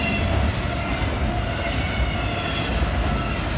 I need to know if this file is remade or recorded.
recorded